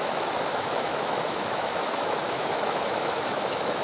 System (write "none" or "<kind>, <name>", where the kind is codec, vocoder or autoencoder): autoencoder, DAC-VAE